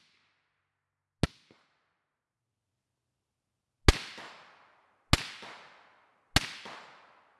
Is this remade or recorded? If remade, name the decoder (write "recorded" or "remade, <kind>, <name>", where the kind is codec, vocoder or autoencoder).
recorded